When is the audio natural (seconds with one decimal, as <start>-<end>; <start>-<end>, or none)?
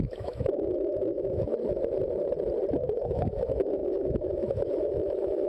1.5-2.7